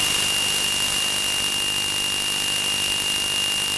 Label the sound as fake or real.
real